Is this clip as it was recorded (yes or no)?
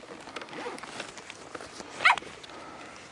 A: yes